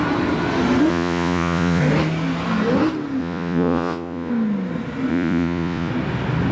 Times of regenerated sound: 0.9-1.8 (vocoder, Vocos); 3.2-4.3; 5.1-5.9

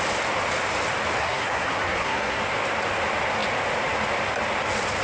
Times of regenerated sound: 1.2-2.4 (codec, SNAC)

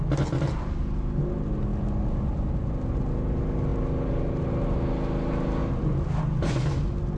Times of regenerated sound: none